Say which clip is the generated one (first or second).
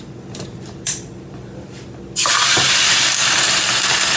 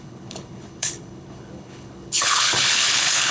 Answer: second